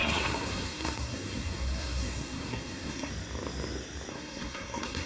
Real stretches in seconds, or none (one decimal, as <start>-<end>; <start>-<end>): 3.1-4.1